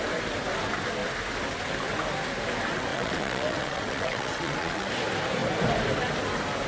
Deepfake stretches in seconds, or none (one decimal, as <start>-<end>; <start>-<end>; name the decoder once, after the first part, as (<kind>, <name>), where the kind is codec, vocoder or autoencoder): 2.9-4.9 (vocoder, WaveNeXt)